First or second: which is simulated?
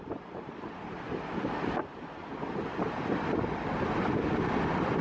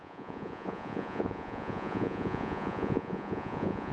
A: second